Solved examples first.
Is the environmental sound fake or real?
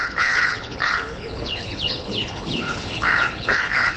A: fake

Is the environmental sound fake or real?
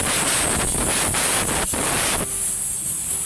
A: real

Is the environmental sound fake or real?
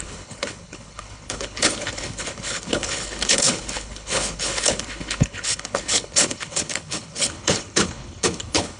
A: fake